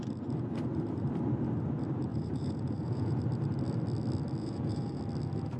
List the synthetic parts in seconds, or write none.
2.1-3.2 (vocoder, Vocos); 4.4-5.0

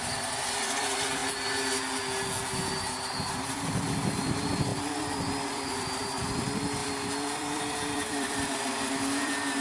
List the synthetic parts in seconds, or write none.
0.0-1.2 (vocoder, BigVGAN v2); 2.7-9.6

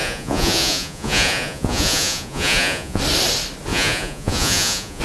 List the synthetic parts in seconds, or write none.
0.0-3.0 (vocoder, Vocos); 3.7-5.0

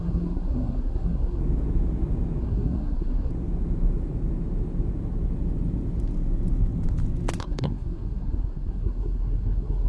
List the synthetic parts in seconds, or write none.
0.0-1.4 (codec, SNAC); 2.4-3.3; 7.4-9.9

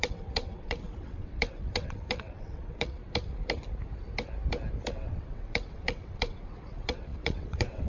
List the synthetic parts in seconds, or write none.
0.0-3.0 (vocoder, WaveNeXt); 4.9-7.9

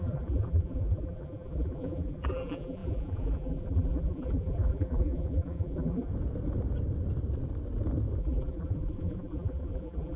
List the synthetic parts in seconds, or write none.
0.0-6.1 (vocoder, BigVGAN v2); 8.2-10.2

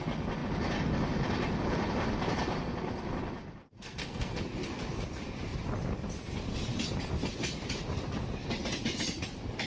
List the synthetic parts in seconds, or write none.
3.6-4.4 (codec, SNAC)